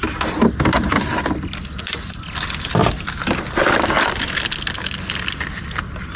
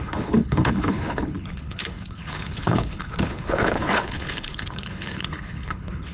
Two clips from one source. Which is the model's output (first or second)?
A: second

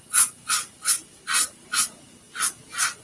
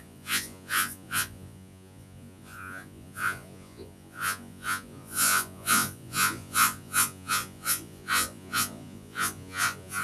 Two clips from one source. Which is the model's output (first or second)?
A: second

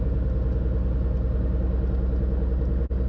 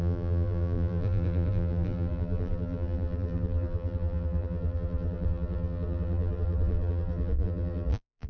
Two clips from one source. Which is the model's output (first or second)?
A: second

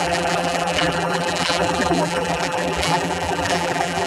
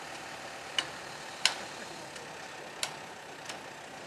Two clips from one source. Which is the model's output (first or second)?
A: first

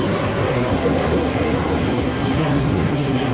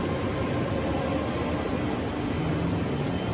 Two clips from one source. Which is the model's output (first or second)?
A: first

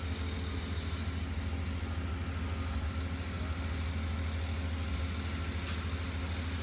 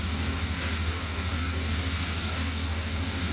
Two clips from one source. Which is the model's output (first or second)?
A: second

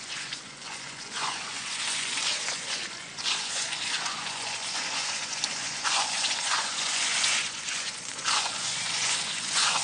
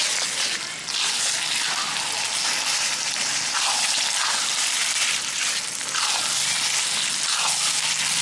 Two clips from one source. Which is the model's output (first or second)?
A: first